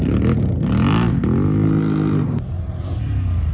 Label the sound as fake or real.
real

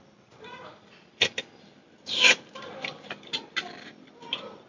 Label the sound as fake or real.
real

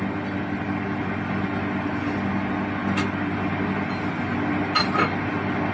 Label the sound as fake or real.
real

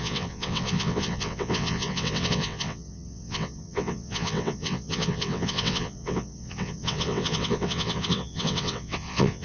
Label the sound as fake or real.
fake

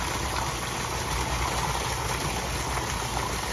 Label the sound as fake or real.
real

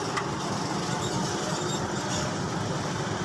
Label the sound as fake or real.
real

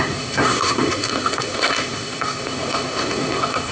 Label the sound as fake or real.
fake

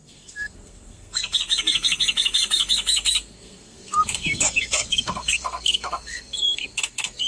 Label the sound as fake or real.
fake